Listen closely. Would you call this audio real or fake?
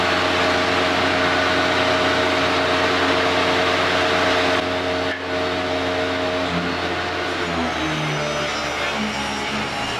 real